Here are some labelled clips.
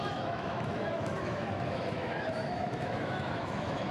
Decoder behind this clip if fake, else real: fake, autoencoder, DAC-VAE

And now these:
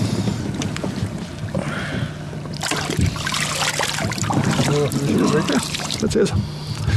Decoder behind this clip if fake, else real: real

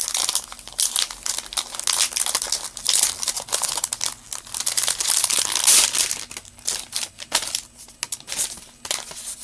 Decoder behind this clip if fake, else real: real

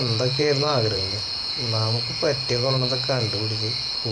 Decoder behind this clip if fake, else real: fake, vocoder, Vocos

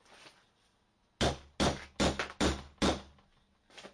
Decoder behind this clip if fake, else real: real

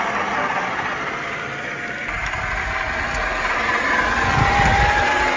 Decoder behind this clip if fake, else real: real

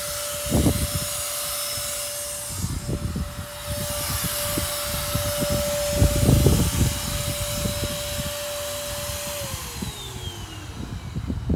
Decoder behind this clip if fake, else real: real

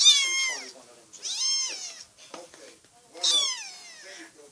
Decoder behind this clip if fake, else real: real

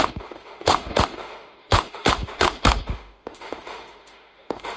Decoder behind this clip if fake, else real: fake, autoencoder, DAC-VAE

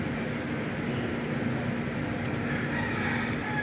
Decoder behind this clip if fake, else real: real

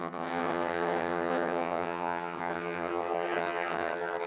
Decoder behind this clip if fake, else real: fake, vocoder, HiFi-GAN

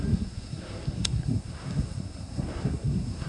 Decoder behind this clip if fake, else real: fake, codec, SNAC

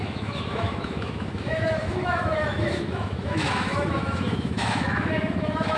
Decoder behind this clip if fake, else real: fake, autoencoder, DAC-VAE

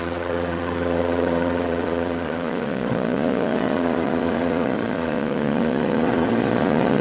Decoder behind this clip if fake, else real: fake, vocoder, Vocos